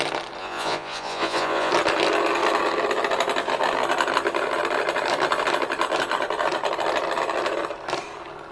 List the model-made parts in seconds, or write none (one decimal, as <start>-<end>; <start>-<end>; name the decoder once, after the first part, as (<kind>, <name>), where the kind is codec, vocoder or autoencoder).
0.4-1.7 (vocoder, Vocos)